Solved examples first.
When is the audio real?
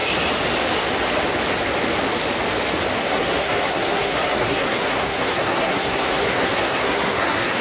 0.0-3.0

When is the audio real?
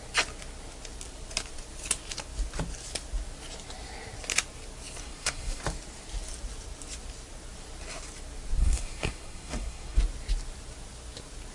0.0-5.0; 5.6-8.6; 10.0-11.5